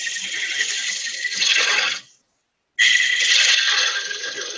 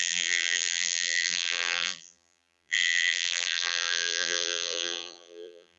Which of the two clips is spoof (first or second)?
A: second